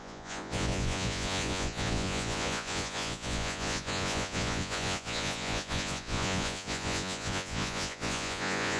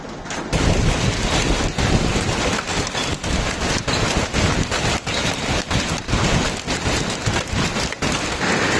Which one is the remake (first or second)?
first